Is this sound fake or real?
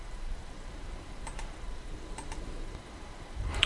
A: fake